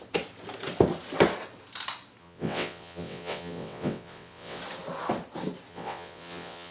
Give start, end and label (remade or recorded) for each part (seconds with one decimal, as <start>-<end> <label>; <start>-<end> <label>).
0.0-2.2 recorded; 2.2-4.6 remade; 4.6-5.7 recorded; 5.7-6.7 remade